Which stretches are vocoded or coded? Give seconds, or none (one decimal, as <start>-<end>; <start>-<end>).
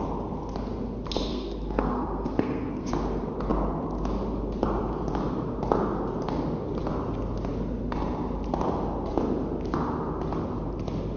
1.3-2.9